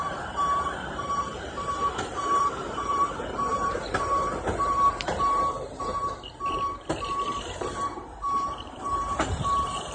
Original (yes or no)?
no